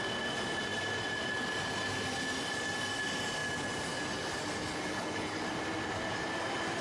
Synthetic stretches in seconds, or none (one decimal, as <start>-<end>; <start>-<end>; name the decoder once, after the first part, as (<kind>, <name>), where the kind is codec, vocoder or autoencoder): 4.9-5.4 (codec, HILCodec)